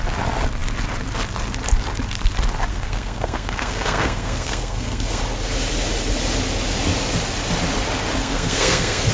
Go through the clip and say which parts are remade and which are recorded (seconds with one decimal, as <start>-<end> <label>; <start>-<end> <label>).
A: 0.0-2.7 recorded; 2.7-5.2 remade; 5.2-8.2 recorded; 8.2-9.1 remade